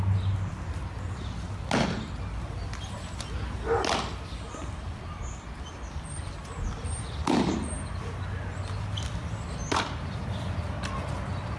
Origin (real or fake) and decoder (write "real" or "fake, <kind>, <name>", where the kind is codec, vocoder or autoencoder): real